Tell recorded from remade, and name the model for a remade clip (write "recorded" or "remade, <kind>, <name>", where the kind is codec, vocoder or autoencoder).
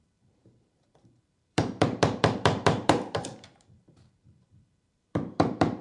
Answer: remade, vocoder, BigVGAN v2